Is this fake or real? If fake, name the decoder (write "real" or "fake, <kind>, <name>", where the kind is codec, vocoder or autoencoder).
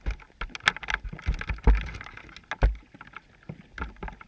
real